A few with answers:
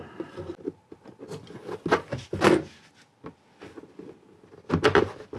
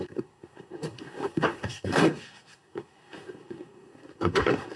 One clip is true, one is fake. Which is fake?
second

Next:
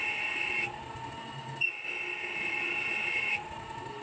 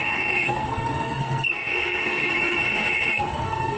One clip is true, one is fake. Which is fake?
second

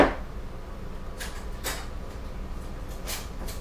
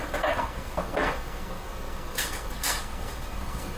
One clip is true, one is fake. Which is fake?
second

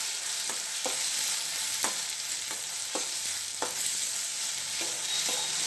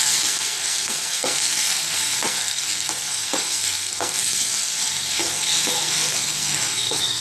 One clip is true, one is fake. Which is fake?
second